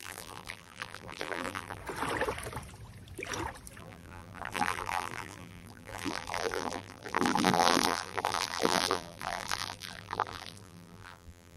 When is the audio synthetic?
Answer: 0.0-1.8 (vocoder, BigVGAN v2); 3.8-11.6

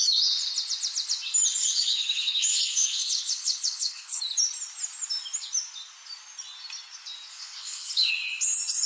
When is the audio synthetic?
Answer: 1.6-4.2 (codec, HILCodec); 7.3-8.1

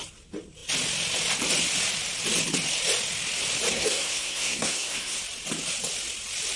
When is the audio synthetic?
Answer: 3.7-5.2 (codec, SNAC)

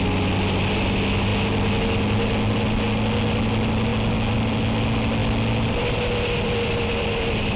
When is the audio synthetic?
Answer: none

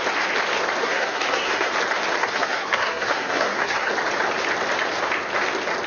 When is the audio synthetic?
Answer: 0.8-1.7 (codec, SNAC); 2.2-3.9

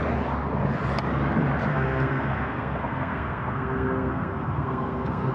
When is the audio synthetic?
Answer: 1.7-5.3 (codec, SNAC)

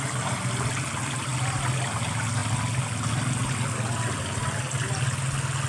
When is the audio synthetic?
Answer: none